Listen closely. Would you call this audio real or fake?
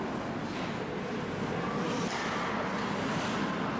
real